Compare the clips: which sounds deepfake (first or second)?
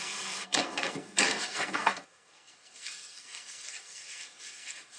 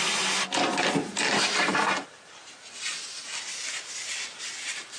first